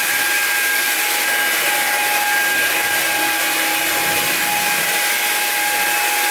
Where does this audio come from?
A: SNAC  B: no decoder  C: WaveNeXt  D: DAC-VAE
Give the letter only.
B